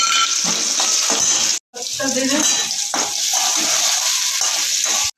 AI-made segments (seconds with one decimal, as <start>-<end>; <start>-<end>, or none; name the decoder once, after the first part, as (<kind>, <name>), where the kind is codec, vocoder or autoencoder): none